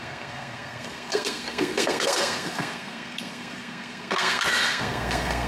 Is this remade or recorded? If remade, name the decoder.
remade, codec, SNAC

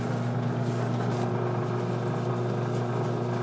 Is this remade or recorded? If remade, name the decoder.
recorded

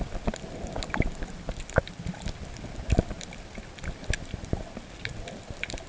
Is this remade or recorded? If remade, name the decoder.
recorded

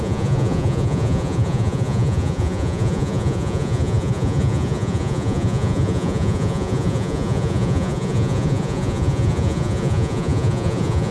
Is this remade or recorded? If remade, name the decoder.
remade, vocoder, Vocos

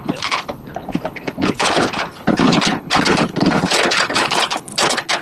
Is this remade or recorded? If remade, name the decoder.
remade, codec, HILCodec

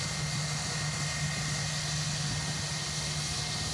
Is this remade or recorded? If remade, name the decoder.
recorded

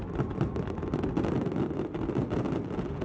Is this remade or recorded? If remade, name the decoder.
recorded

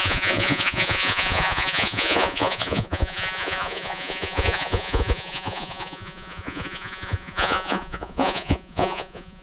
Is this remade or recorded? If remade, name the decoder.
remade, vocoder, Vocos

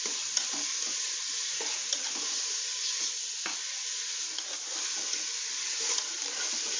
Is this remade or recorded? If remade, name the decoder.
recorded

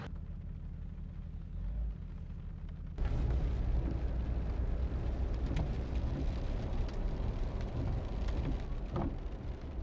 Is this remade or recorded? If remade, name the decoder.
recorded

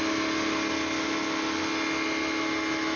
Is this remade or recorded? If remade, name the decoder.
recorded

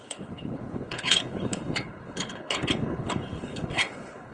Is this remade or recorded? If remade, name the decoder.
remade, codec, HILCodec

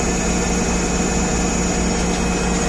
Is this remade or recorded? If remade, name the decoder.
recorded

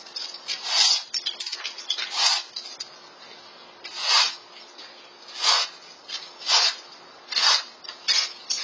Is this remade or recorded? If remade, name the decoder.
recorded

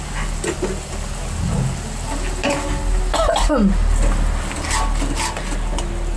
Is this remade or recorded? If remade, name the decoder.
recorded